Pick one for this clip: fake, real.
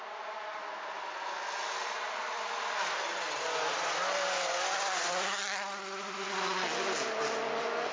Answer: real